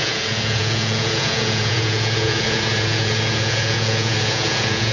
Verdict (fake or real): fake